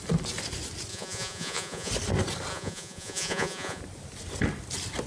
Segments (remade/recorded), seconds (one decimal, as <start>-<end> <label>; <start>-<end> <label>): 0.0-0.9 recorded; 0.9-1.9 remade; 1.9-2.5 recorded; 2.5-3.8 remade; 3.8-5.1 recorded

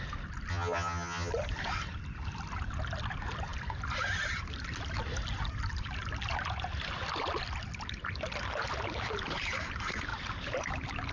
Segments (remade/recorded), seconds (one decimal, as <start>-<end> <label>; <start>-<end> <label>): 0.0-0.5 recorded; 0.5-1.3 remade; 1.3-11.1 recorded